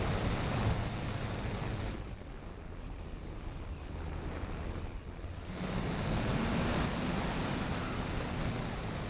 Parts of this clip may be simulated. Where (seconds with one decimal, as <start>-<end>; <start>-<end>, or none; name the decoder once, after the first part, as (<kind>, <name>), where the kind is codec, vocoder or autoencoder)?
none